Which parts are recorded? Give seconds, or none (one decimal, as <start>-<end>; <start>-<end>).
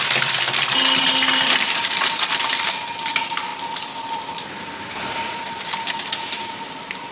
0.0-7.1